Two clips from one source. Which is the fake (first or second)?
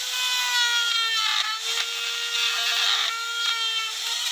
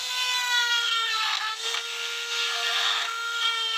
second